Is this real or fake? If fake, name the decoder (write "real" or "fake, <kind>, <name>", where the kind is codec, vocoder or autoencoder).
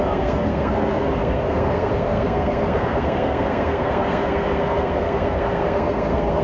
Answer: fake, codec, SNAC